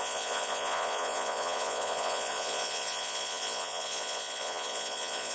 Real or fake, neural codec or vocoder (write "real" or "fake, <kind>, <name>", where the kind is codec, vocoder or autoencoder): fake, vocoder, Vocos